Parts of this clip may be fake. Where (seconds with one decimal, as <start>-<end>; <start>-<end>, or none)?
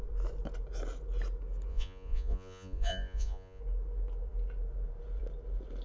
1.7-3.6